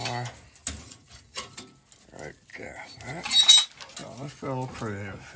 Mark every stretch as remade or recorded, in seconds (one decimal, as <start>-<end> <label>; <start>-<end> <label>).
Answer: 0.0-0.8 recorded; 0.8-1.5 remade; 1.5-2.5 recorded; 2.5-3.0 remade; 3.0-5.4 recorded